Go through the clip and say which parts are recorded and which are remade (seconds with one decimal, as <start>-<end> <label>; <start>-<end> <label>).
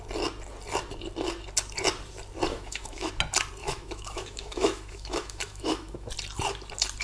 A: 0.0-2.5 recorded; 2.5-3.1 remade; 3.1-3.6 recorded; 3.6-6.1 remade; 6.1-7.0 recorded